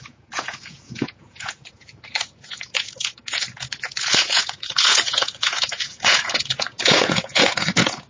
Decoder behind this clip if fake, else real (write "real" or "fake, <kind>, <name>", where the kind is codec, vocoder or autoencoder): fake, vocoder, Vocos